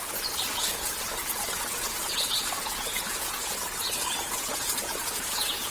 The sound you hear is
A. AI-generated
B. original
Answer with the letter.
A